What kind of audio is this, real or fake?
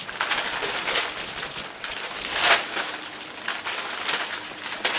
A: real